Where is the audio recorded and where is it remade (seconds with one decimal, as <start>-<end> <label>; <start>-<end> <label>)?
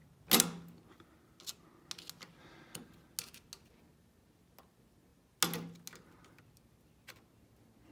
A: 0.0-7.9 recorded